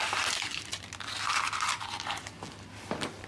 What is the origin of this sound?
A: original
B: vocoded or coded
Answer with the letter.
A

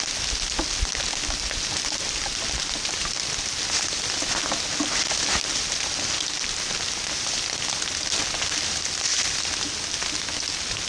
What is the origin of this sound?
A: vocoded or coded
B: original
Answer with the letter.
B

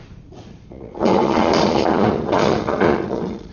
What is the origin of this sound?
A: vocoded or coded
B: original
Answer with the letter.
A